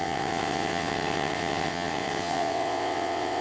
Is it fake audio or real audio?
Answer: fake